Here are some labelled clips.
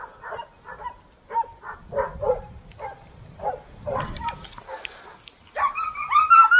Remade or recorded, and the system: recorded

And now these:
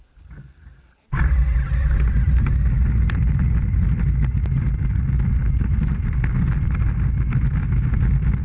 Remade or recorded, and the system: recorded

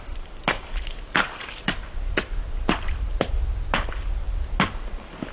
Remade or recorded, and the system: recorded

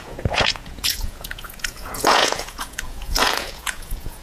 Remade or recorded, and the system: remade, vocoder, Vocos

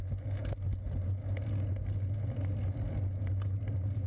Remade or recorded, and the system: recorded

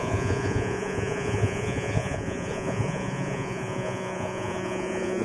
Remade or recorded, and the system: remade, vocoder, Vocos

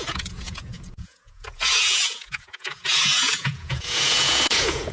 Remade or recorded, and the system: remade, vocoder, Vocos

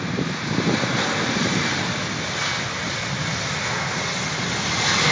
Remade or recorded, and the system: recorded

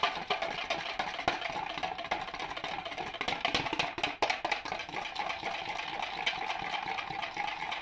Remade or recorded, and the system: recorded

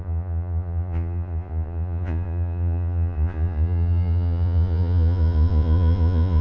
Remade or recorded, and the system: remade, vocoder, Vocos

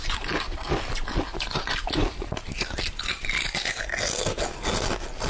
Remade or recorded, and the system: recorded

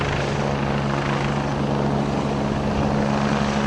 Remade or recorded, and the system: recorded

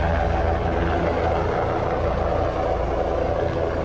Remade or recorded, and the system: recorded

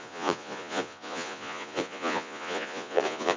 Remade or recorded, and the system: remade, vocoder, Vocos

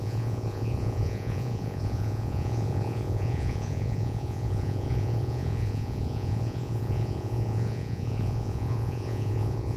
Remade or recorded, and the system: remade, vocoder, Vocos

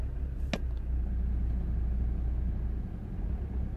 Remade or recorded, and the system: recorded